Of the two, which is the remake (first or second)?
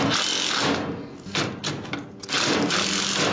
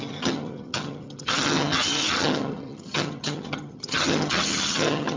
second